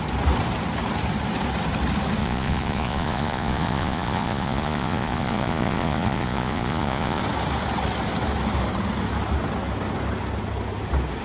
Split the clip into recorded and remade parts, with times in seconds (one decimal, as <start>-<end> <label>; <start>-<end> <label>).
0.0-2.2 recorded; 2.2-7.2 remade; 7.2-11.2 recorded